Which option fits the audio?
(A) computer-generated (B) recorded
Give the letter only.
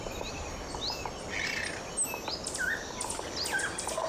B